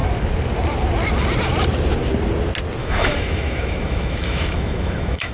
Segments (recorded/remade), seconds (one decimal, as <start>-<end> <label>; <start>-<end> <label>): 0.0-2.8 recorded; 2.8-5.3 remade